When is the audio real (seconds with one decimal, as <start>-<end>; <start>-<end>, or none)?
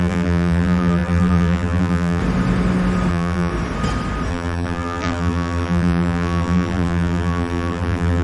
2.2-3.1; 3.5-4.3